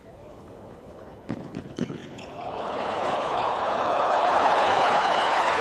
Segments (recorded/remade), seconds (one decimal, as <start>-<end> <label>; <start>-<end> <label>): 0.0-5.6 remade